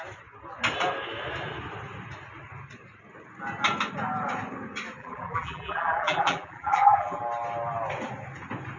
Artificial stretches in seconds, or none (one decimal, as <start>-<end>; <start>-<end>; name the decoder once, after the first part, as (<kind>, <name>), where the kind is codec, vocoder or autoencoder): 5.0-7.2 (vocoder, BigVGAN v2)